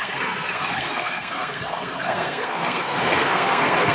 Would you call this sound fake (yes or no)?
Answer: yes